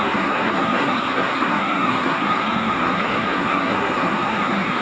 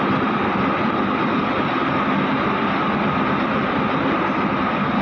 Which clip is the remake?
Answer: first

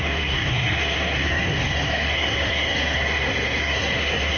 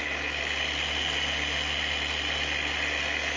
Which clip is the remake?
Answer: first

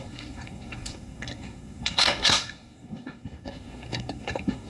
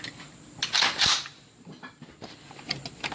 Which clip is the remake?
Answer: first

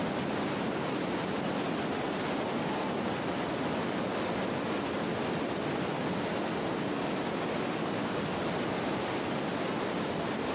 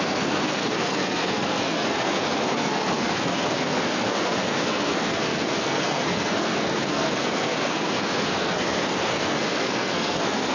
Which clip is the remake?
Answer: second